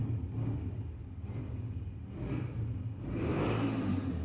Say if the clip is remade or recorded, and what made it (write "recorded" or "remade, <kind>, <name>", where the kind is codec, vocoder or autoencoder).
recorded